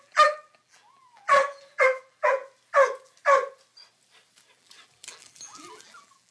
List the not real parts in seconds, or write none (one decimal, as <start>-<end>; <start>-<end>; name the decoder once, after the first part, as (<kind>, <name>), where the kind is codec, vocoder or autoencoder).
0.0-2.4 (vocoder, BigVGAN v2); 4.5-6.3